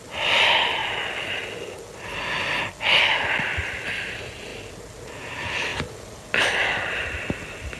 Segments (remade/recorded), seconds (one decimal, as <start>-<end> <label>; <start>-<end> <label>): 0.0-7.8 recorded